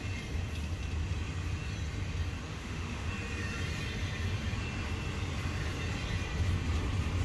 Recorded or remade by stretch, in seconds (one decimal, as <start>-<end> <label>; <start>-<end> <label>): 0.0-2.5 recorded; 2.5-3.1 remade; 3.1-7.2 recorded